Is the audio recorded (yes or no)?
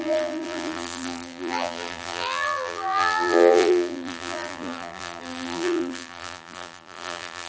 no